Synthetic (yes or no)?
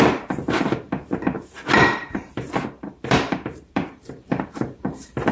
yes